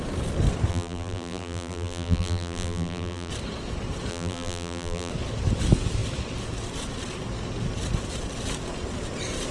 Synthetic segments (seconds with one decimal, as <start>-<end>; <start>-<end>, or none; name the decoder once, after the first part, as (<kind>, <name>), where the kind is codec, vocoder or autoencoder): 0.7-3.3 (vocoder, BigVGAN v2); 4.1-5.1